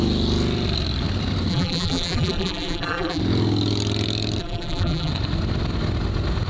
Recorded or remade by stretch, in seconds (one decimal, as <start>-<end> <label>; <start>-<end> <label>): 0.0-1.5 recorded; 1.5-3.2 remade; 3.2-4.4 recorded; 4.4-5.1 remade; 5.1-6.5 recorded